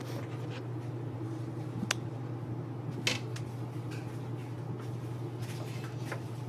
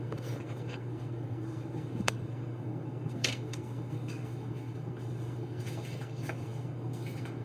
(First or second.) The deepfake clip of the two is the second